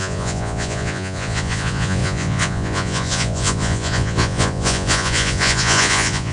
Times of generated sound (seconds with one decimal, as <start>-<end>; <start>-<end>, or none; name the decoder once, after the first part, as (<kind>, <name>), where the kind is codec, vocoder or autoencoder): 0.0-6.3 (vocoder, Vocos)